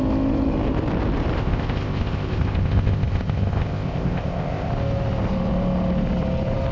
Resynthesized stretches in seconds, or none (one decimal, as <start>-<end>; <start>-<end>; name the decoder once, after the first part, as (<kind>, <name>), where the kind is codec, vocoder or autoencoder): 1.4-4.7 (codec, ZipCodec)